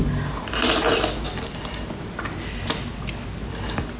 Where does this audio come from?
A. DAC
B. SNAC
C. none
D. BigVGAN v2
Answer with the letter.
C